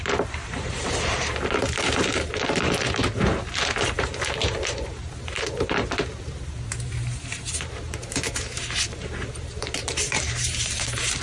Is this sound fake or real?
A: fake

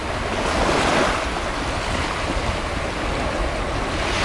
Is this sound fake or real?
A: real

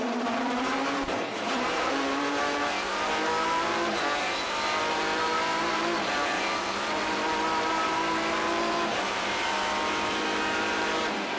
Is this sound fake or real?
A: fake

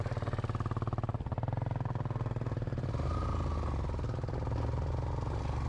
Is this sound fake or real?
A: real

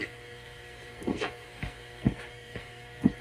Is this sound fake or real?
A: fake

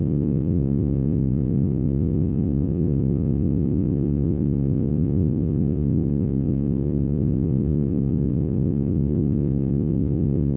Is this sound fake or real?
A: fake